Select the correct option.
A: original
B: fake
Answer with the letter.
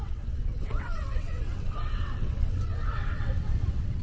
B